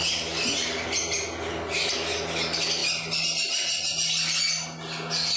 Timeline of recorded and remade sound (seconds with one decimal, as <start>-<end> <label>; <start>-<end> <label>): 0.0-5.4 recorded

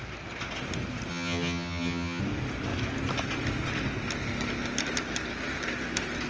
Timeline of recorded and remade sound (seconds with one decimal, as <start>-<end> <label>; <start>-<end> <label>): 0.0-1.1 recorded; 1.1-2.2 remade; 2.2-6.3 recorded

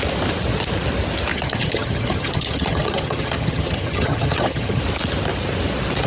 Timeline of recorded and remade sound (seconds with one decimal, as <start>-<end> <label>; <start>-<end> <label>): 0.0-1.3 recorded; 1.3-4.8 remade; 4.8-6.1 recorded

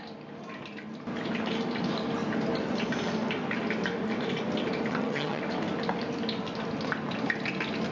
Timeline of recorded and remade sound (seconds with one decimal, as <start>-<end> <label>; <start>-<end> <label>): 0.0-4.9 recorded; 4.9-5.4 remade; 5.4-7.9 recorded

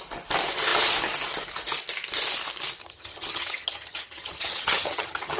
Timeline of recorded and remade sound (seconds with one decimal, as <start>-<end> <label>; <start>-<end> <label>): 0.0-2.8 recorded; 2.8-5.4 remade